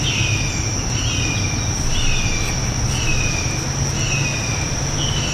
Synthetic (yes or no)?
no